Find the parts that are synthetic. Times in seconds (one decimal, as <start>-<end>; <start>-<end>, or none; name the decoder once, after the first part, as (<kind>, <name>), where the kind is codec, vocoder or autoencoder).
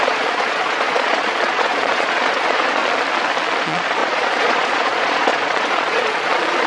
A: 0.0-2.8 (vocoder, Vocos); 3.6-6.7